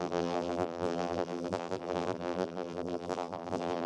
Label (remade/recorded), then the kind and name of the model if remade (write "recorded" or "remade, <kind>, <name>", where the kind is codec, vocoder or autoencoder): remade, vocoder, BigVGAN v2